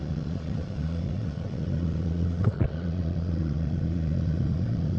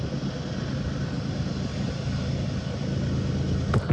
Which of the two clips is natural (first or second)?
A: second